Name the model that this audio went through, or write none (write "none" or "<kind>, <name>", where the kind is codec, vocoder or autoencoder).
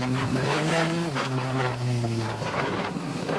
codec, SNAC